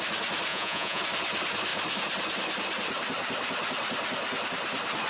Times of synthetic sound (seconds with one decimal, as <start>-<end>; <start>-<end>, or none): 0.5-1.0